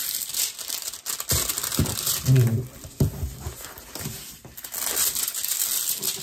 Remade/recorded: recorded